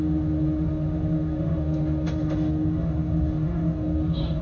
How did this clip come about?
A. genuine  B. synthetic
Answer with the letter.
B